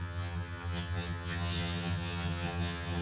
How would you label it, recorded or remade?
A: remade